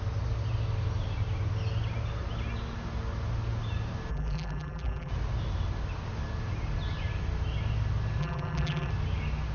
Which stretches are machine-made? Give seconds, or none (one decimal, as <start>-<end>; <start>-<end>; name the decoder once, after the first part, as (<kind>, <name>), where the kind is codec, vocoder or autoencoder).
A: 4.1-5.1 (vocoder, BigVGAN v2); 8.2-8.9